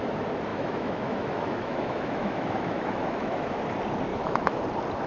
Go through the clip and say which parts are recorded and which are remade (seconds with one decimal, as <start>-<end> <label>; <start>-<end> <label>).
0.0-0.5 recorded; 0.5-3.6 remade; 3.6-4.1 recorded; 4.1-4.6 remade; 4.6-5.1 recorded